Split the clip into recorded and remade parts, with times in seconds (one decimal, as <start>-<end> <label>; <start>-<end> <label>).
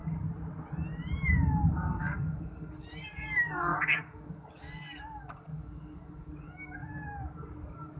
0.0-1.7 recorded; 1.7-6.8 remade; 6.8-7.5 recorded; 7.5-8.0 remade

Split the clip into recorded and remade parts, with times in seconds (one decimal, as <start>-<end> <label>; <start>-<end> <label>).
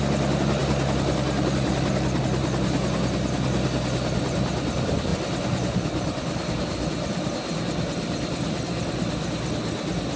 0.0-10.2 recorded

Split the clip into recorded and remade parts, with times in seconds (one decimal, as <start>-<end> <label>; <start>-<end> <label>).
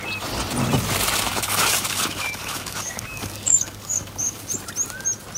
0.0-1.3 recorded; 1.3-4.5 remade; 4.5-5.4 recorded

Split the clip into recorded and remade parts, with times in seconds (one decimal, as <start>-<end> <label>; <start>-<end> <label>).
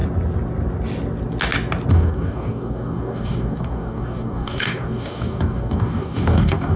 0.0-1.9 recorded; 1.9-6.8 remade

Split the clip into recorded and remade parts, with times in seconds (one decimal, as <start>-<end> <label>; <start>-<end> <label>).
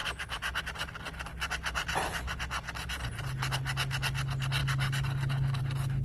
0.0-4.6 recorded; 4.6-5.6 remade; 5.6-6.0 recorded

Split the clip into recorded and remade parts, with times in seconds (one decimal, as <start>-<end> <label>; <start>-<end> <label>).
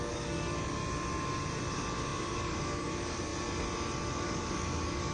0.0-0.8 remade; 0.8-1.7 recorded; 1.7-3.3 remade; 3.3-4.1 recorded; 4.1-5.1 remade